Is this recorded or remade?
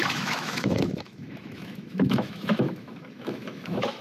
remade